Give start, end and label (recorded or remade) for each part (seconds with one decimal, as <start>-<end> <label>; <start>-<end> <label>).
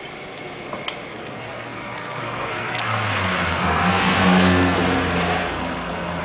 0.0-1.1 recorded; 1.1-4.8 remade; 4.8-5.4 recorded; 5.4-6.2 remade